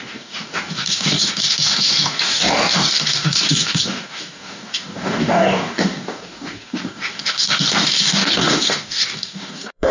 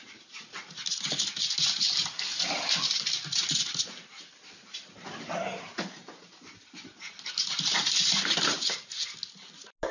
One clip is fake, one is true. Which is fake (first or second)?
first